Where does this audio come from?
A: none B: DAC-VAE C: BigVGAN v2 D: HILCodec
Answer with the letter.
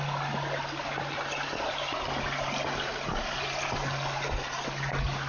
A